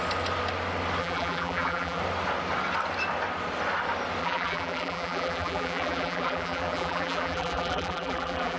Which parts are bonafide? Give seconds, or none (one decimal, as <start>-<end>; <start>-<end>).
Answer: 0.0-1.0; 2.0-4.2